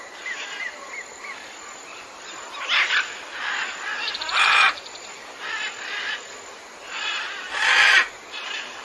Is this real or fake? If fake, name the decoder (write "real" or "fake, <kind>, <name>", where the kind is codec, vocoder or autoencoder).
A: fake, vocoder, BigVGAN v2